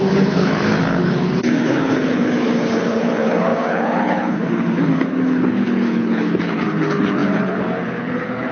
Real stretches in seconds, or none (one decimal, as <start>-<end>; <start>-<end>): none